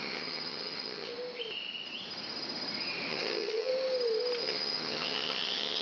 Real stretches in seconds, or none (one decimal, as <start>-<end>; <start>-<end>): 1.1-3.1; 3.7-4.4